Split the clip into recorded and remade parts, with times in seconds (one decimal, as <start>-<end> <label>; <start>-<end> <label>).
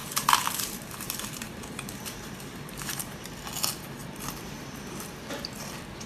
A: 0.0-3.3 remade; 3.3-6.1 recorded